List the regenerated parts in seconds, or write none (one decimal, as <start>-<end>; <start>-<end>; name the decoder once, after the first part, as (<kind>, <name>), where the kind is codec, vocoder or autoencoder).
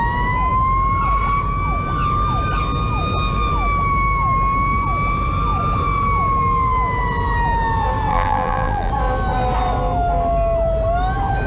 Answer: 8.1-8.9 (vocoder, BigVGAN v2)